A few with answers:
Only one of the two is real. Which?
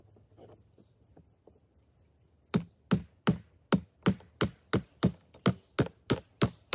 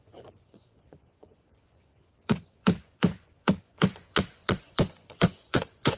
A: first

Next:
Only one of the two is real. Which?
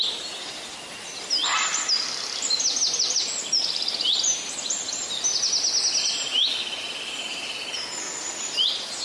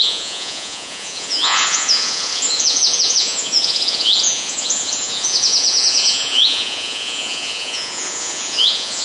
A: first